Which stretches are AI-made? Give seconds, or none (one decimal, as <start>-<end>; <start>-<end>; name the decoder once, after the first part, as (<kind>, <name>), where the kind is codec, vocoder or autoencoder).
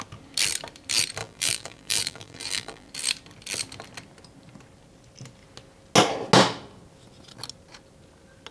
1.2-2.9 (vocoder, BigVGAN v2)